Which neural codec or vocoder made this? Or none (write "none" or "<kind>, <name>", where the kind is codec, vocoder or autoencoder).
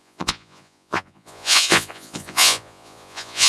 vocoder, Vocos